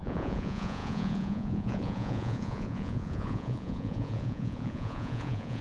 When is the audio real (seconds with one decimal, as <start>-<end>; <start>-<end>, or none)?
none